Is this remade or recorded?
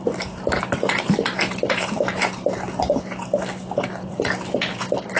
recorded